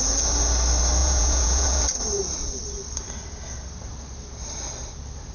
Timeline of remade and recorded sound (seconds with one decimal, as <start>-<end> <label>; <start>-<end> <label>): 0.0-1.0 recorded; 1.0-1.8 remade; 1.8-5.3 recorded